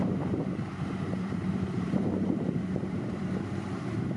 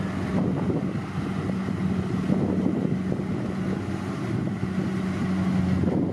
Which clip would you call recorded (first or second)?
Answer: second